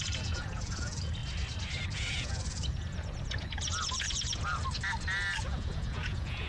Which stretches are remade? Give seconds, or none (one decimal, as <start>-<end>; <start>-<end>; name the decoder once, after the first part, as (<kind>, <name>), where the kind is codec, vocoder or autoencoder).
0.0-1.2 (vocoder, Vocos); 1.9-4.6; 5.4-6.5